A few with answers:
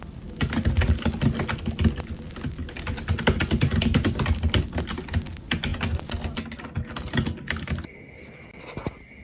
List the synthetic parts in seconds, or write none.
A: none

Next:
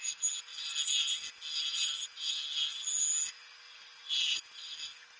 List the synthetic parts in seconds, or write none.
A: none

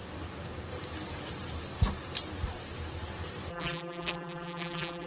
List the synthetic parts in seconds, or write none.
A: 3.5-5.1 (vocoder, BigVGAN v2)

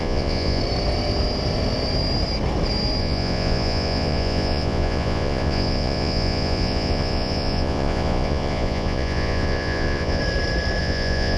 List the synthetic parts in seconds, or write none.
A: 0.0-0.6 (vocoder, Vocos); 3.0-10.2; 10.8-11.4

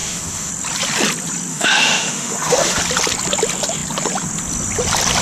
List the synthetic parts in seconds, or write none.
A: 0.0-0.5 (autoencoder, DAC-VAE); 1.5-2.8